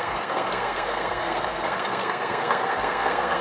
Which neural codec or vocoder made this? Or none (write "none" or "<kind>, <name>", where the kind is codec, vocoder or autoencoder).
codec, SNAC